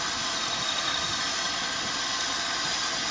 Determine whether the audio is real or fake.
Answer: real